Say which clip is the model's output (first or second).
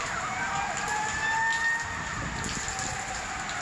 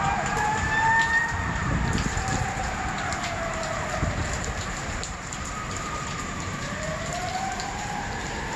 second